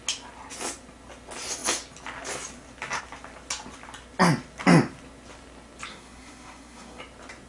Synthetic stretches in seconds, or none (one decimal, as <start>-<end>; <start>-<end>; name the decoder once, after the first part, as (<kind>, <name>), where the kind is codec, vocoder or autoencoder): 5.9-7.0 (codec, SNAC)